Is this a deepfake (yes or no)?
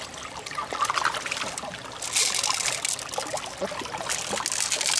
no